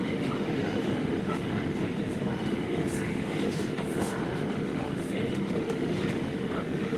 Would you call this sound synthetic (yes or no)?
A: yes